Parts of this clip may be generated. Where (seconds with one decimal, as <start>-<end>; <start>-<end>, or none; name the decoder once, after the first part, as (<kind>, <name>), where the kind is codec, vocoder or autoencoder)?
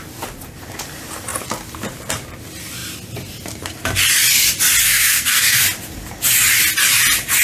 4.8-5.6 (codec, SNAC)